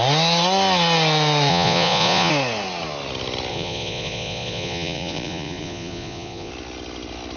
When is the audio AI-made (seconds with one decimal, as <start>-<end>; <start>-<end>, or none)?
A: 1.5-2.3; 3.5-6.5